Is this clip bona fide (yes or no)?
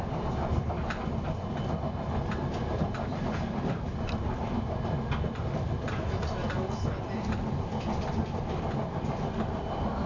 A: yes